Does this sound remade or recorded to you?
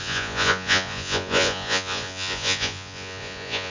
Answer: remade